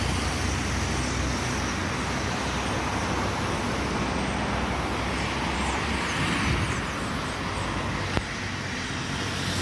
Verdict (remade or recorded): recorded